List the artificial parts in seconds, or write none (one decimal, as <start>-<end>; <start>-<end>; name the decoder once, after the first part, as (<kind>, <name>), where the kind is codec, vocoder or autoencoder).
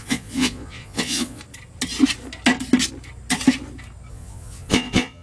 0.0-1.4 (vocoder, Vocos); 4.1-5.2